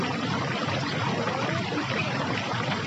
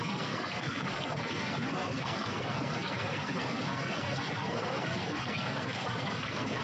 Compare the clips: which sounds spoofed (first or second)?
second